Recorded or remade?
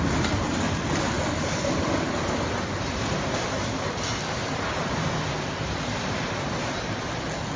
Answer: recorded